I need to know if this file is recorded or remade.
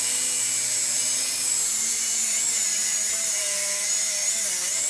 remade